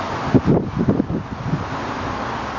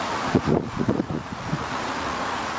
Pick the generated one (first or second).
second